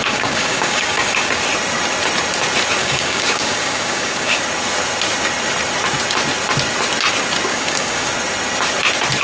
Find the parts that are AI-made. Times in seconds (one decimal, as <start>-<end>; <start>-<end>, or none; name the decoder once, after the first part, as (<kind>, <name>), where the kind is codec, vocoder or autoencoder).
0.0-1.4 (codec, DAC); 2.8-4.4; 7.5-8.1